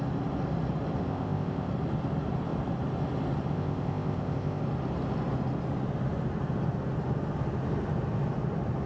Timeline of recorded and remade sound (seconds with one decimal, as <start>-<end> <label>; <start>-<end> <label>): 0.0-1.0 recorded; 1.0-1.7 remade; 1.7-3.5 recorded; 3.5-4.6 remade; 4.6-8.9 recorded